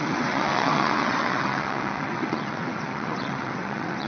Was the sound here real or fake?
fake